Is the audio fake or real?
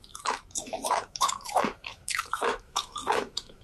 fake